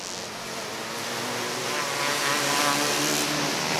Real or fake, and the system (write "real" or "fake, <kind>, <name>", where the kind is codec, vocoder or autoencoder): real